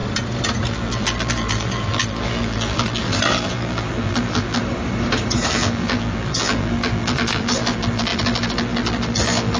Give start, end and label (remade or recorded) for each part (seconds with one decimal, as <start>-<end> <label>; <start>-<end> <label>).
0.0-0.7 recorded; 0.7-4.6 remade; 4.6-5.5 recorded; 5.5-9.6 remade